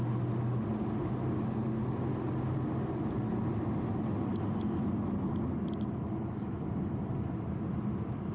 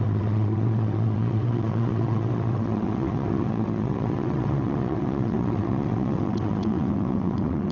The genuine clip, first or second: first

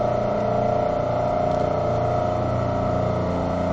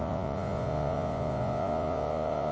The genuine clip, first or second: first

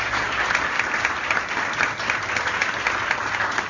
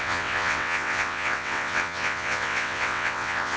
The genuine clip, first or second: first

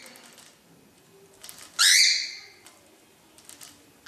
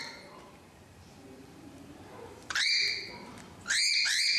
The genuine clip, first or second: first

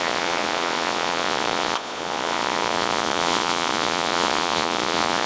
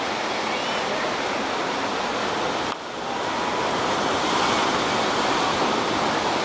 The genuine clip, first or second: second